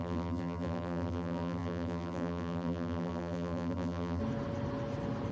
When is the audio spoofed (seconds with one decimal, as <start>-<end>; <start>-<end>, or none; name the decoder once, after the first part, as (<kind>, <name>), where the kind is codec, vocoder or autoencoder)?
0.0-4.2 (vocoder, BigVGAN v2)